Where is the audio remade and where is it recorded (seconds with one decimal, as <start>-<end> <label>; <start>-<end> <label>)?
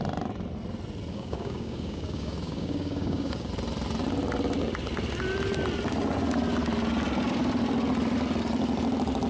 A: 0.0-1.1 recorded; 1.1-3.5 remade; 3.5-9.3 recorded